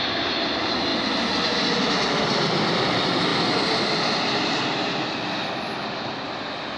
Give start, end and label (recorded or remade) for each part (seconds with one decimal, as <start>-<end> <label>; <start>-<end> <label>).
0.0-6.8 recorded